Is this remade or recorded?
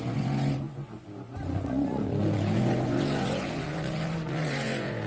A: remade